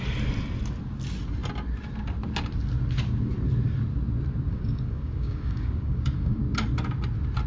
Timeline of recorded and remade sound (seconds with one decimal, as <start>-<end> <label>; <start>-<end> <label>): 0.0-4.5 recorded; 4.5-6.4 remade; 6.4-7.5 recorded